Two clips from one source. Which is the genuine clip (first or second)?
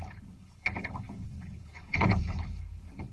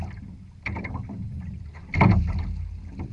second